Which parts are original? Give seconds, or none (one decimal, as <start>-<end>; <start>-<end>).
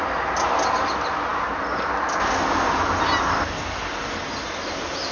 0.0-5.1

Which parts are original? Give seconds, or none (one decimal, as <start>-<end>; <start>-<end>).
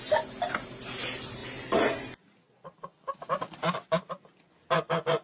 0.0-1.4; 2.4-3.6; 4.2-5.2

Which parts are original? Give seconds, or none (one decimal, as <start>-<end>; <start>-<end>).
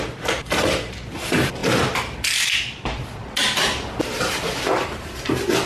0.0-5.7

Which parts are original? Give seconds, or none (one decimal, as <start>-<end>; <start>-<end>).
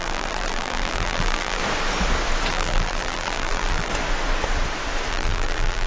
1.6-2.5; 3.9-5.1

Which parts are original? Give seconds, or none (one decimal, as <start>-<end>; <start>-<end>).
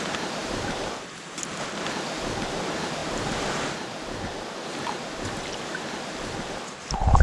0.0-0.4; 1.1-7.2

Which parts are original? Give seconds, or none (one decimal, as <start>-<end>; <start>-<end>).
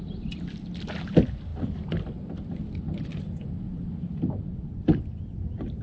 0.0-1.5; 5.0-5.8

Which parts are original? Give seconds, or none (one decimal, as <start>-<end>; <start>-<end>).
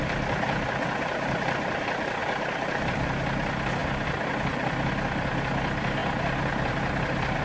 0.0-7.4